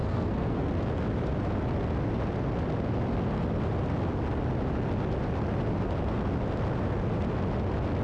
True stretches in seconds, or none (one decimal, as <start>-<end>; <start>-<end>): 0.7-8.0